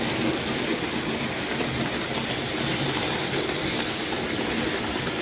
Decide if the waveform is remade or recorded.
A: remade